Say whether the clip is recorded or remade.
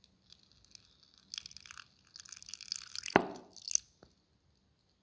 recorded